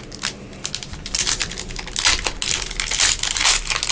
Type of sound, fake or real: real